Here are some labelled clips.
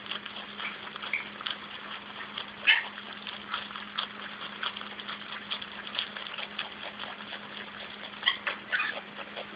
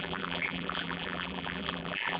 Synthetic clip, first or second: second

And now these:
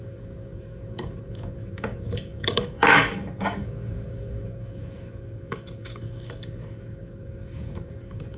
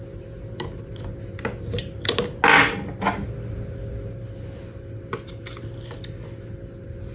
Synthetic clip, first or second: first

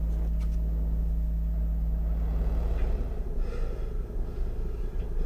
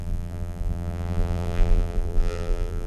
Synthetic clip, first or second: second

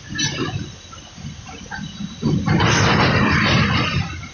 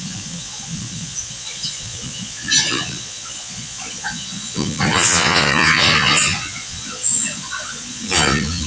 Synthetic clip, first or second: second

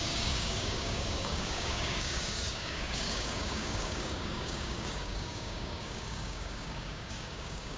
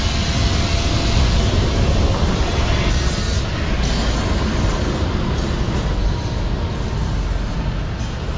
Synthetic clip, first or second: first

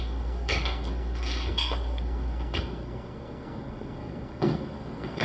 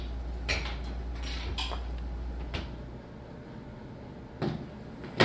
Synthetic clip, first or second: first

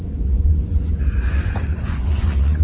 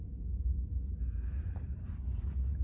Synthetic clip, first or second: first